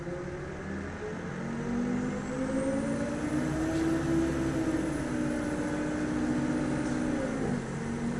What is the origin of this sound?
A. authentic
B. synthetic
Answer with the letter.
A